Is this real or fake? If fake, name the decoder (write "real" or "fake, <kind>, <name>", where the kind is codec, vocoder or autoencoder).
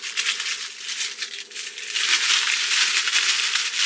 real